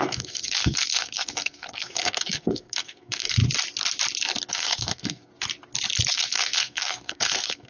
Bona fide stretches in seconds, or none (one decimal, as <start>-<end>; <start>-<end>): 3.4-4.5; 5.3-6.1